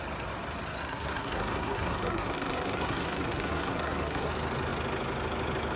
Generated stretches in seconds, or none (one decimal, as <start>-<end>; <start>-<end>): 0.8-4.3